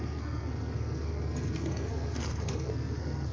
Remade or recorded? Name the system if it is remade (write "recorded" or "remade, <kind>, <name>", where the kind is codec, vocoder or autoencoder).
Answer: remade, codec, SNAC